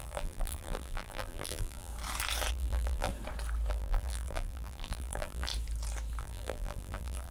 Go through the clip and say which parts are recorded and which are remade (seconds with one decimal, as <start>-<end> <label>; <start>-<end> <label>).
0.0-1.9 remade; 1.9-2.5 recorded; 2.5-3.1 remade; 3.1-3.7 recorded; 3.7-5.5 remade; 5.5-6.2 recorded; 6.2-7.3 remade